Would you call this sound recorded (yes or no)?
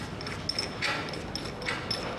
yes